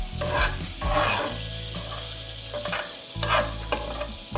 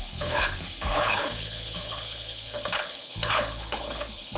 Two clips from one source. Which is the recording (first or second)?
first